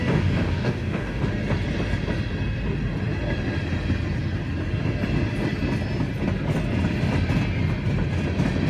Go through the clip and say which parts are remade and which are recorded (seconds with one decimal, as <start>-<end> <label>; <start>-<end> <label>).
0.0-1.2 remade; 1.2-8.7 recorded